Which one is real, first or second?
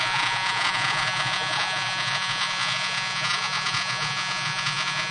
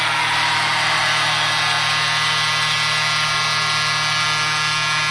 second